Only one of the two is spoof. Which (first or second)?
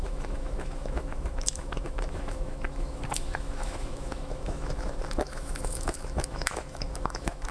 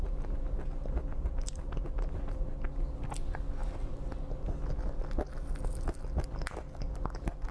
first